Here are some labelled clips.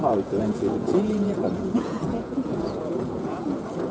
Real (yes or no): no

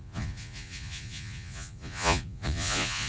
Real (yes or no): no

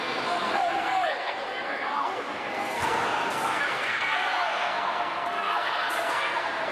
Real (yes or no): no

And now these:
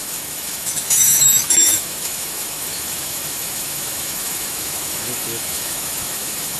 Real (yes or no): no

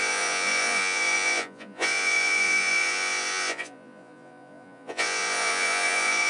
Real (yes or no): no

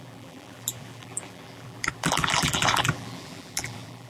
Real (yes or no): no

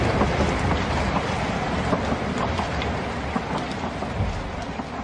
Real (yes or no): yes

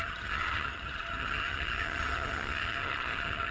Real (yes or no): no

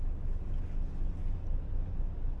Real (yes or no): yes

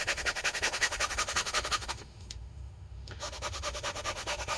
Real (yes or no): no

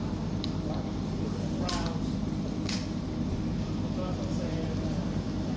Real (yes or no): yes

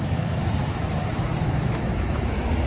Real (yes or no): no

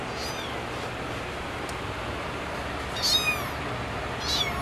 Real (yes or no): yes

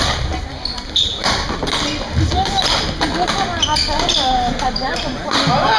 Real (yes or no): yes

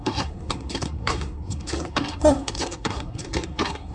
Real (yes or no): no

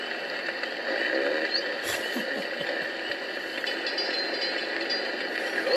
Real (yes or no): yes